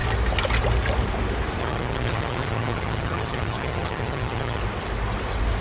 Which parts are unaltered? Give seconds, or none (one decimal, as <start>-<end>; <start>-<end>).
0.0-1.6; 4.6-5.6